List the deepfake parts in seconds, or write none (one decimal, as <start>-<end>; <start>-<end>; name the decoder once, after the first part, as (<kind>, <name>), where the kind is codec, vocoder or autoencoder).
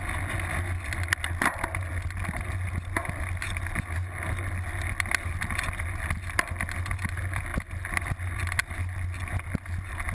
none